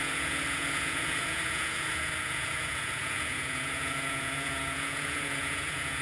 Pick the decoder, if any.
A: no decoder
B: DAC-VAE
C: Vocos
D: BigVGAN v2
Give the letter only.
C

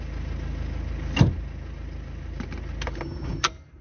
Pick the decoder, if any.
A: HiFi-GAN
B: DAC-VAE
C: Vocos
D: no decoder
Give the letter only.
D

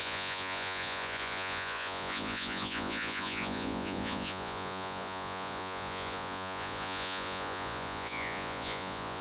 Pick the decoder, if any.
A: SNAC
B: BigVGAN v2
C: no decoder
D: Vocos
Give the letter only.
D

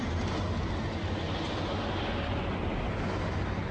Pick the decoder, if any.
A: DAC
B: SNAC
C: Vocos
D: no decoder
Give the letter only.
D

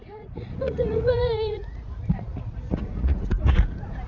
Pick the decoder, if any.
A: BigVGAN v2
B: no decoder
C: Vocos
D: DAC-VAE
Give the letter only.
C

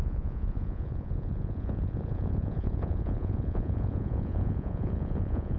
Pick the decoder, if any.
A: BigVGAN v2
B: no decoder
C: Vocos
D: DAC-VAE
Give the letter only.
C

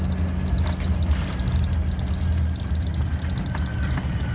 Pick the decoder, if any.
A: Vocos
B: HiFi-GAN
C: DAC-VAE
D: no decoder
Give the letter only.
D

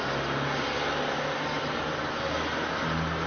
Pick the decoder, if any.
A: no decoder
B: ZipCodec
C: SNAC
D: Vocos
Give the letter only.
A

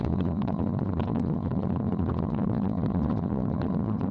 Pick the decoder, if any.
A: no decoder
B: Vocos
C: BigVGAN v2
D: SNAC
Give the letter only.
B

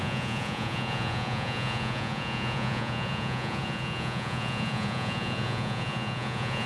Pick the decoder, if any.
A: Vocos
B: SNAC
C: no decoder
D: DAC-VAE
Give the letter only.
A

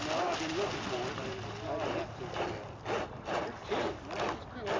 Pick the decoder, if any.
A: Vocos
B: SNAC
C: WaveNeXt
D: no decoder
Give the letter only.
D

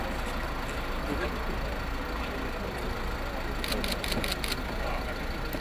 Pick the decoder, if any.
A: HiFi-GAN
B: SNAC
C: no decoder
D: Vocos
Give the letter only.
C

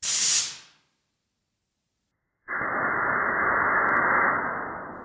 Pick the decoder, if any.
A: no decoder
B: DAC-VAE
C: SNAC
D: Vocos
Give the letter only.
A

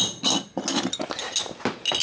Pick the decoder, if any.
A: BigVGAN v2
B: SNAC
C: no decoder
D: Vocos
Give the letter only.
C